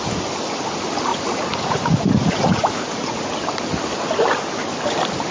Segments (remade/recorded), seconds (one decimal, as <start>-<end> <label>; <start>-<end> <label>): 0.0-1.1 recorded; 1.1-3.2 remade; 3.2-5.3 recorded